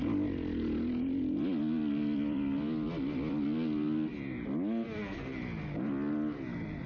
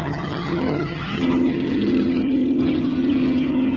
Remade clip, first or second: second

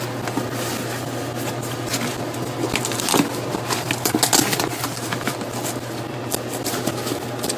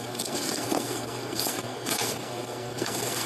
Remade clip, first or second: second